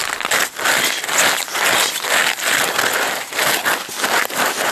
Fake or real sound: real